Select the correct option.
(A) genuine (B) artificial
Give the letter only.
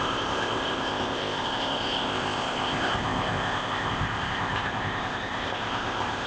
B